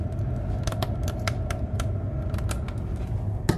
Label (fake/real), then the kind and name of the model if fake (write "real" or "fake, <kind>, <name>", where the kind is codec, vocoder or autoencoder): real